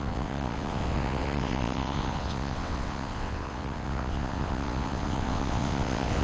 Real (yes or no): no